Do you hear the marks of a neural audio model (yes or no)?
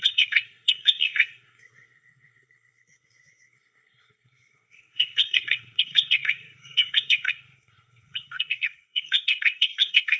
yes